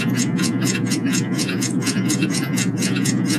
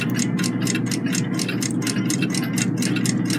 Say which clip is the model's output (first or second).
first